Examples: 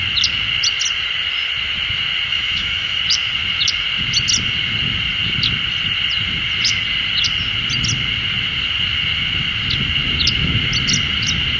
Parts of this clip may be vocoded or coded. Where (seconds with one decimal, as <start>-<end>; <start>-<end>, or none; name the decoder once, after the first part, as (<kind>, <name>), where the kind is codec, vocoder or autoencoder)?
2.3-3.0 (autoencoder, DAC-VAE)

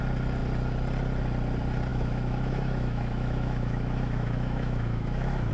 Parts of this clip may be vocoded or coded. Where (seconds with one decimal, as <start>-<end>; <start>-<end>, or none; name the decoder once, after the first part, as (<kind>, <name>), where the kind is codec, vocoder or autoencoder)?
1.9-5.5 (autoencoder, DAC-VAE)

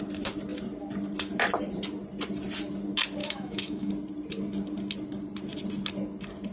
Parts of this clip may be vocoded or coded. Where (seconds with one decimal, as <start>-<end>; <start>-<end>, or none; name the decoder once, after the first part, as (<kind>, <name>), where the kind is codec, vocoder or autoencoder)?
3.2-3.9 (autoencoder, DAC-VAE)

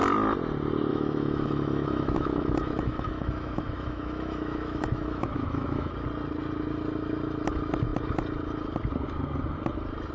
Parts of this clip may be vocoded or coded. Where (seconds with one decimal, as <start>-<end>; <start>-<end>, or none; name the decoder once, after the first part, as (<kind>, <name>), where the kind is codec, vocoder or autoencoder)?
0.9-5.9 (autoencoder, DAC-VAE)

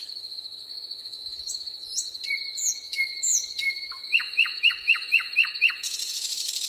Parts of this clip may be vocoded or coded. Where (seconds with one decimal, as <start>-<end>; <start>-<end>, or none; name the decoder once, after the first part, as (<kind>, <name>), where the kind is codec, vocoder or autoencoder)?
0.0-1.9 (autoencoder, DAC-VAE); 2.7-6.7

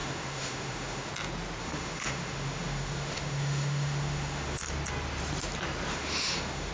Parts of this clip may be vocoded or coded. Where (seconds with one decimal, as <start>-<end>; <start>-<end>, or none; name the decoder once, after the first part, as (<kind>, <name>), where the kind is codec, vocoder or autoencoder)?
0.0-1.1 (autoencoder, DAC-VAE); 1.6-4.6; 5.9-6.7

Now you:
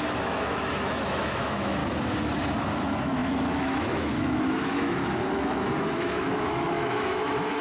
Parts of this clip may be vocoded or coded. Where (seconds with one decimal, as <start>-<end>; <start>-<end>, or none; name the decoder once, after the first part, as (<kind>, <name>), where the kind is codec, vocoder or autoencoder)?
0.0-1.8 (autoencoder, DAC-VAE); 2.8-7.6

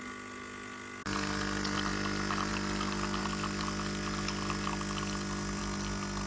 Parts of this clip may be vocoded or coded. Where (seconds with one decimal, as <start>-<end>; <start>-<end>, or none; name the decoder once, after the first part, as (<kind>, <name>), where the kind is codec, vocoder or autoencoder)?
none